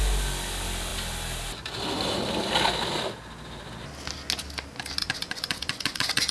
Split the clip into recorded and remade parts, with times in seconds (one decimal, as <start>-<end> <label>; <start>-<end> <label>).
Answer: 0.0-5.0 recorded; 5.0-6.3 remade